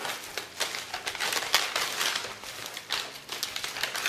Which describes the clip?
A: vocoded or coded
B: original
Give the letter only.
B